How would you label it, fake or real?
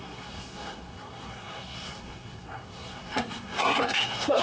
fake